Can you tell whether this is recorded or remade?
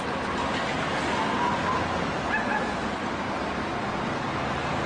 recorded